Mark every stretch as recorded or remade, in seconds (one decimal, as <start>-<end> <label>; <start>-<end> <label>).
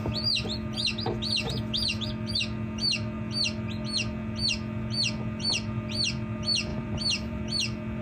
0.0-6.7 recorded; 6.7-7.4 remade; 7.4-8.0 recorded